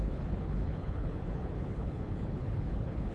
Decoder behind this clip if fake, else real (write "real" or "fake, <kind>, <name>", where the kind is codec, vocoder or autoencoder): fake, codec, HILCodec